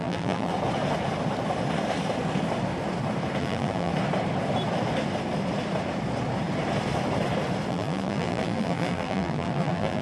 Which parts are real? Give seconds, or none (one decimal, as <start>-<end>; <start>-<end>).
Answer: 0.5-3.4; 3.9-7.7